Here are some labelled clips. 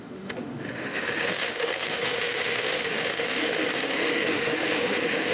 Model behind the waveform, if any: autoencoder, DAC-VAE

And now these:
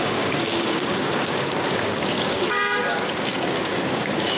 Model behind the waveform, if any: codec, DAC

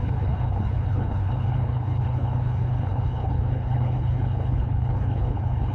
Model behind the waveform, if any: codec, HILCodec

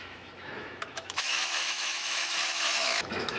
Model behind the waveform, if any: autoencoder, DAC-VAE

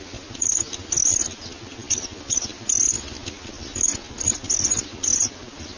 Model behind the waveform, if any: none